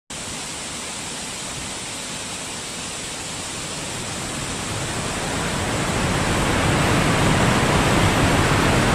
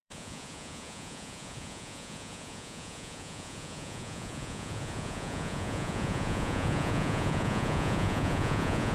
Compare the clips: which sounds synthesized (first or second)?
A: second